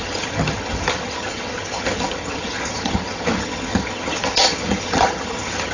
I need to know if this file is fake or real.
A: fake